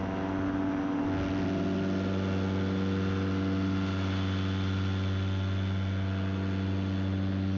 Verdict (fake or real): real